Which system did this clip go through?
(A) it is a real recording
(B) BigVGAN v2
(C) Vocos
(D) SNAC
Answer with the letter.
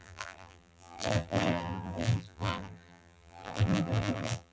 B